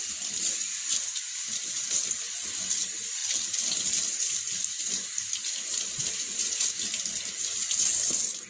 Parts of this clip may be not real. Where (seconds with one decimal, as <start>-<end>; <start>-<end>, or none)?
1.4-2.4; 3.2-6.7